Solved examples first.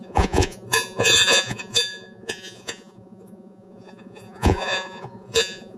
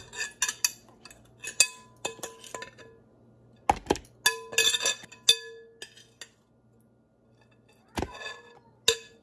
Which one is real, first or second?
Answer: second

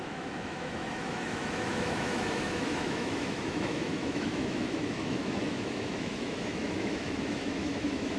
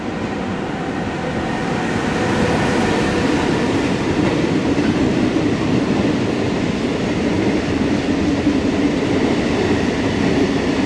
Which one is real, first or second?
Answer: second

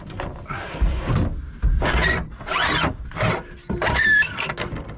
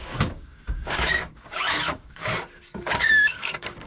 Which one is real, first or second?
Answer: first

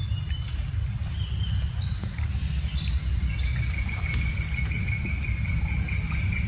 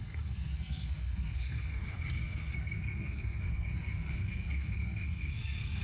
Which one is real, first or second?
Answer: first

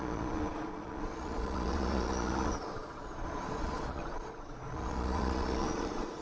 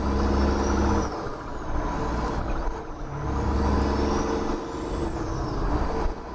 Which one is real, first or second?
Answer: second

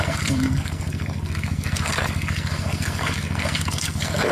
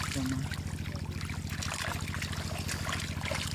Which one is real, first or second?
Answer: second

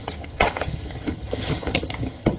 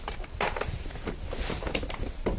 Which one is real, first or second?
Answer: second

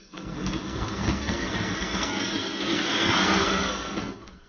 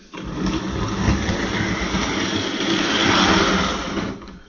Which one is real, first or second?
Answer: second